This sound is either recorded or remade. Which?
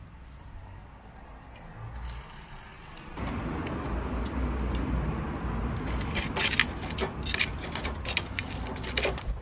recorded